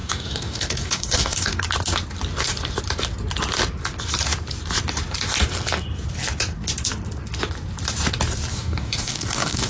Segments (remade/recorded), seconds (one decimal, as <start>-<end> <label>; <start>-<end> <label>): 0.0-1.6 remade; 1.6-8.5 recorded; 8.5-9.7 remade